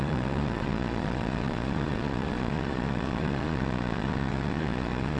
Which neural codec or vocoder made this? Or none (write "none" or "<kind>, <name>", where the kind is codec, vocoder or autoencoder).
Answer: vocoder, Vocos